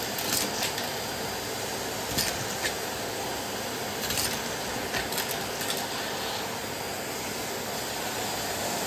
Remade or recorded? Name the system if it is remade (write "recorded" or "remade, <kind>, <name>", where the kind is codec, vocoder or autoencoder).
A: recorded